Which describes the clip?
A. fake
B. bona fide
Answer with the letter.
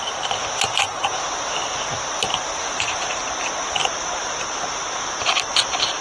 B